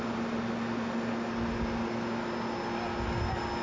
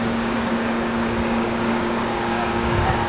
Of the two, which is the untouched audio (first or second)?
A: first